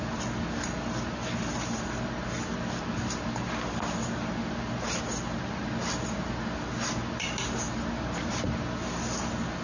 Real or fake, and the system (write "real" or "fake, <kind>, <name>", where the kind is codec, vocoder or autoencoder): real